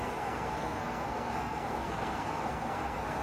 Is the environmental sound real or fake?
fake